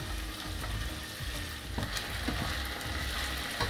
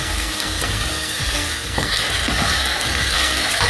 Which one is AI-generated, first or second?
second